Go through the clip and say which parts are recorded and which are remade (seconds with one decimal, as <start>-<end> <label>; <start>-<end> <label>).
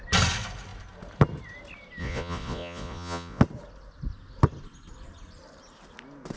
0.0-2.0 recorded; 2.0-3.4 remade; 3.4-6.4 recorded